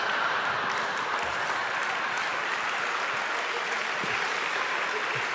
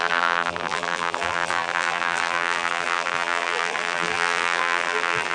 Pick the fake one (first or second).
second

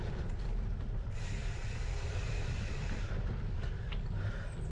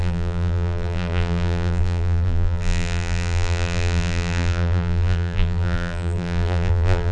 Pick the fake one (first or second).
second